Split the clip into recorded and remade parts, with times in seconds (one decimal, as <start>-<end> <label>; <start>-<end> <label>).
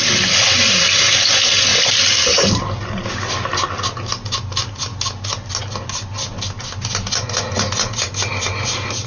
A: 0.0-9.1 recorded